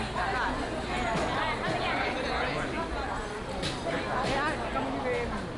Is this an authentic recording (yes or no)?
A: yes